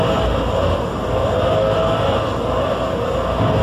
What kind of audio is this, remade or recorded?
recorded